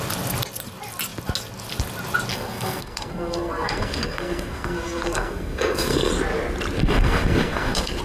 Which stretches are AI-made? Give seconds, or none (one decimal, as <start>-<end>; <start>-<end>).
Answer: 2.3-6.1; 6.8-8.0